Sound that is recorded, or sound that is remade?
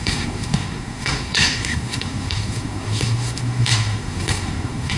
remade